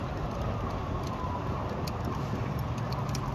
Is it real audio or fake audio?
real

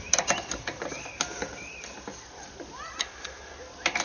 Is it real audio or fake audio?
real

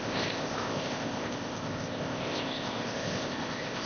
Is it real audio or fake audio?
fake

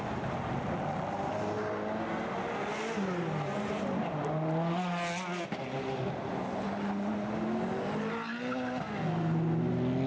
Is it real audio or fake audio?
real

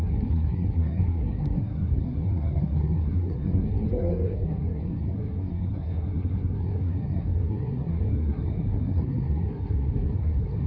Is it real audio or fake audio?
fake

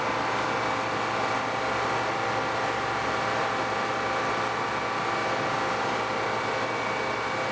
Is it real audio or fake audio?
real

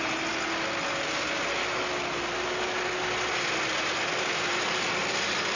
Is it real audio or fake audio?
real